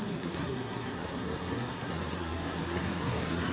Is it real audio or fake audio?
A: fake